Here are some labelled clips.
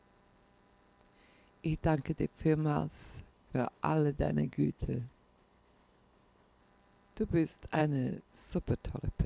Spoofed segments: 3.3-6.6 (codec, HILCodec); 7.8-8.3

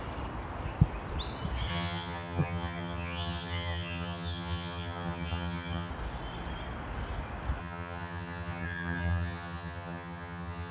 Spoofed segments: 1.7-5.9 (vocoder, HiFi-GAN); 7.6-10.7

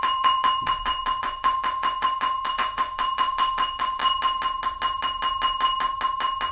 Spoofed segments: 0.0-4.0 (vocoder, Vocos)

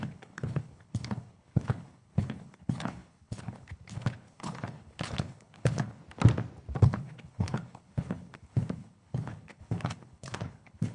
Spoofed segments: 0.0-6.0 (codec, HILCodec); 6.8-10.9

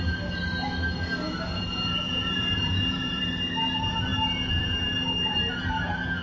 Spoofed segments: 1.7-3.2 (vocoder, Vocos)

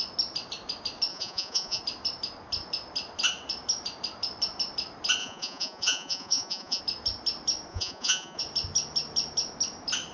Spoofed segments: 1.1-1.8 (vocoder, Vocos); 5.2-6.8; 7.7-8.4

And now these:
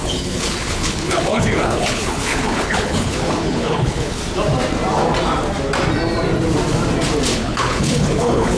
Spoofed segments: 0.0-4.2 (codec, HILCodec); 7.3-8.6